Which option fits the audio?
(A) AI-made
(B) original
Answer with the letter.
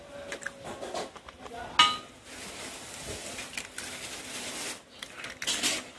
B